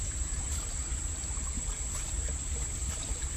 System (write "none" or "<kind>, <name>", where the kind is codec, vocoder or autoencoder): vocoder, BigVGAN v2